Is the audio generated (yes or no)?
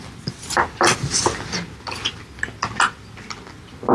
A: no